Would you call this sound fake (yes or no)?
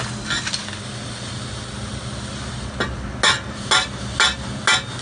no